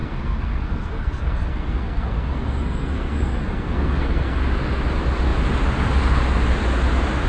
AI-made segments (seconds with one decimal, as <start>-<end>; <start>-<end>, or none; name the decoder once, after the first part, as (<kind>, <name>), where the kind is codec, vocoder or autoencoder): 0.0-4.4 (codec, SNAC)